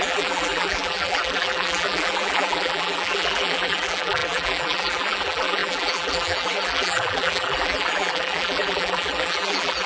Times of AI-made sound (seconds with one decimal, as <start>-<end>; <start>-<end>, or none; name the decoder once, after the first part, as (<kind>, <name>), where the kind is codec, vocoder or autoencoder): 0.0-9.9 (vocoder, BigVGAN v2)